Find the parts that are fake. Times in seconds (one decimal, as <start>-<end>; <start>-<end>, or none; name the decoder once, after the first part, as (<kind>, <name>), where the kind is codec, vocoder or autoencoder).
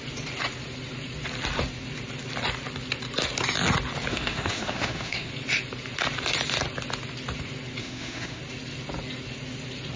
4.1-5.3 (autoencoder, DAC-VAE); 7.8-8.4